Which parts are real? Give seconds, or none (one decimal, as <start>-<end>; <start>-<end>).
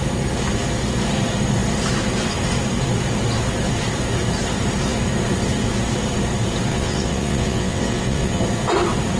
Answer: 0.0-6.7; 8.4-9.2